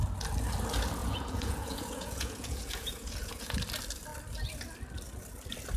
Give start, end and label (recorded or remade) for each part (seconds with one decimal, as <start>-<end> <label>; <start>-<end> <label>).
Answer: 0.0-1.0 recorded; 1.0-3.6 remade; 3.6-5.8 recorded